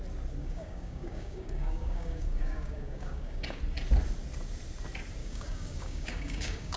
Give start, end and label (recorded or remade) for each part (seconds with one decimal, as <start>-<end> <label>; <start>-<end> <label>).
0.0-0.4 recorded; 0.4-3.6 remade; 3.6-5.2 recorded; 5.2-6.8 remade